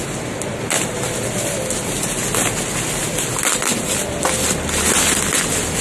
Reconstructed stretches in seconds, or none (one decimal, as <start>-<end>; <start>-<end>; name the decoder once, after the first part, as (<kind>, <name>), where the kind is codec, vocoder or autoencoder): none